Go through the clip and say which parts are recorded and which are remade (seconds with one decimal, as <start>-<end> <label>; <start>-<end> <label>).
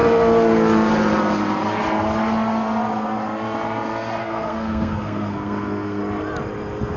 0.0-4.2 recorded; 4.2-6.0 remade; 6.0-7.0 recorded